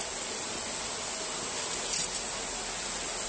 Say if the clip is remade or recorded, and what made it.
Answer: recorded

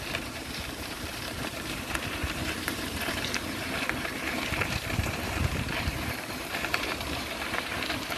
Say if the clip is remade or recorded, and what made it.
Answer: remade, vocoder, BigVGAN v2